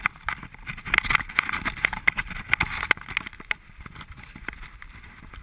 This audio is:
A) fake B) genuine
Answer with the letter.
B